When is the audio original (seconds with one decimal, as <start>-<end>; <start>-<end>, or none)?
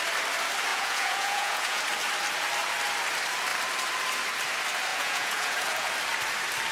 0.0-0.7; 1.8-4.9; 5.9-6.7